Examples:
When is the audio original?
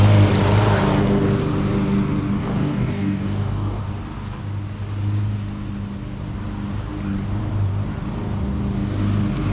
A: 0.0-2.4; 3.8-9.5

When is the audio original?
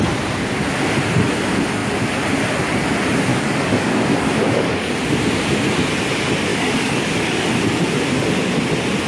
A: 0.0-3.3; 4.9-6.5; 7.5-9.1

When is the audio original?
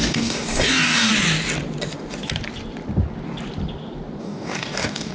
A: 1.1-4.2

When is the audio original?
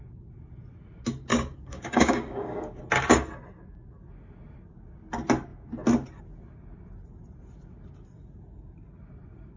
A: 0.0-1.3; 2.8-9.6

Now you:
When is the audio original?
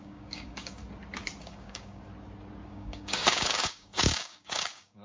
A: 0.8-1.4; 2.0-2.7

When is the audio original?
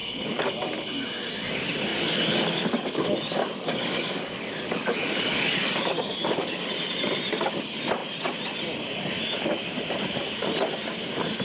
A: 0.5-1.9; 6.7-11.4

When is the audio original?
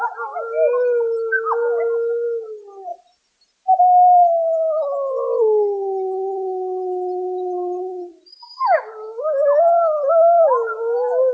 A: 0.0-8.3; 9.2-11.3